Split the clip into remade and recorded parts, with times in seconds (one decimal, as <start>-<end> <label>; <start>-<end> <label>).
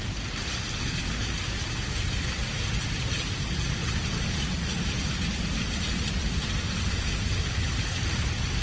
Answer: 0.0-3.8 recorded; 3.8-5.8 remade; 5.8-8.6 recorded